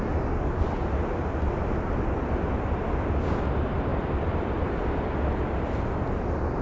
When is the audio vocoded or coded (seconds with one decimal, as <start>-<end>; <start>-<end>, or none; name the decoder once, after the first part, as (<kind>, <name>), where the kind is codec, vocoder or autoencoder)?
0.8-2.5 (vocoder, BigVGAN v2); 3.9-5.8